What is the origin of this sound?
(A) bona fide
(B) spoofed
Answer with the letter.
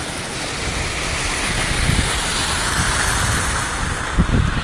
A